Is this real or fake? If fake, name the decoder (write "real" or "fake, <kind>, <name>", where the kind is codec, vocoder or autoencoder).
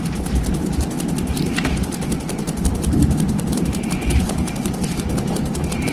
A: fake, vocoder, BigVGAN v2